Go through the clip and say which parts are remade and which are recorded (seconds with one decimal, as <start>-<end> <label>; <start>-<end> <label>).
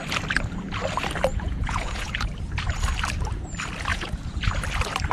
0.0-1.3 recorded; 1.3-2.3 remade; 2.3-3.9 recorded; 3.9-4.6 remade; 4.6-5.1 recorded